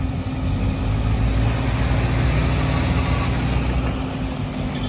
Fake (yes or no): no